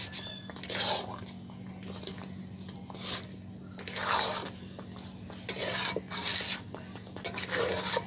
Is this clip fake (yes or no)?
no